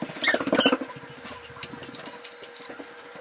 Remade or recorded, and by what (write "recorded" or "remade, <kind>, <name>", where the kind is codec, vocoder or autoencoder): recorded